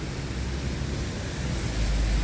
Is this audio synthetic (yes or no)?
no